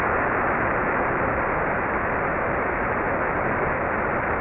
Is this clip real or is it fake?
real